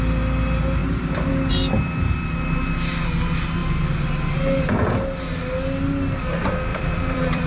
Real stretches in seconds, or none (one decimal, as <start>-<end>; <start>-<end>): 0.0-0.8; 1.3-6.7